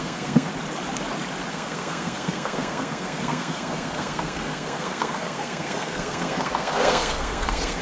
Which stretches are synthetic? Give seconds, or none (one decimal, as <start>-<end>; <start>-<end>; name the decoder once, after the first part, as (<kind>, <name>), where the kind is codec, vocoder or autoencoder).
0.0-0.5 (codec, SNAC); 1.5-7.8